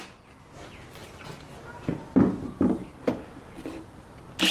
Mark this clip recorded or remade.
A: recorded